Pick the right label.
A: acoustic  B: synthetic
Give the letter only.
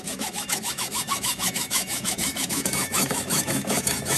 B